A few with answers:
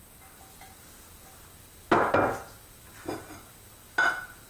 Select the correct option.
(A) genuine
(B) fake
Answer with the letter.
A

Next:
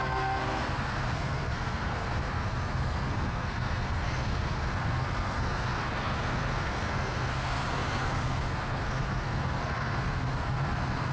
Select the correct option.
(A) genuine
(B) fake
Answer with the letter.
B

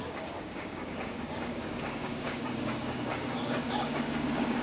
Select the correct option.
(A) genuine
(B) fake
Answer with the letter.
B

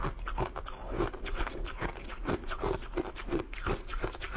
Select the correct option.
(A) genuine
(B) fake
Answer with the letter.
A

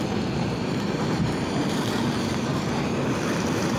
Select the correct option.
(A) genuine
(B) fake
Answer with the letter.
A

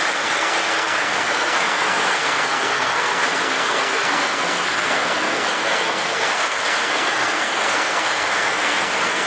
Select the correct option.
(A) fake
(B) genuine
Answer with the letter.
A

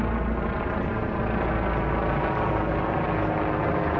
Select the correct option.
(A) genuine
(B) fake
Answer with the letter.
A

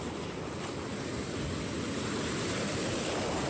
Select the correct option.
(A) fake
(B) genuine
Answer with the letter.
B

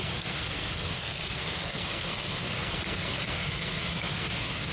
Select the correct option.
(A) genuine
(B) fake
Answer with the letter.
B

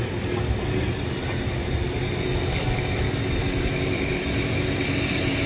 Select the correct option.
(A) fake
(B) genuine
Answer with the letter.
B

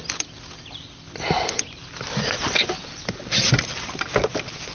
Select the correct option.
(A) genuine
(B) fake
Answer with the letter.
A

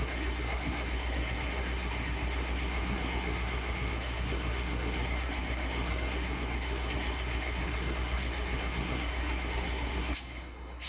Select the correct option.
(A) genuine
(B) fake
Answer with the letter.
B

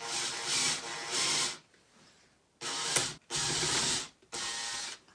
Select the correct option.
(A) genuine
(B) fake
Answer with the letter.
A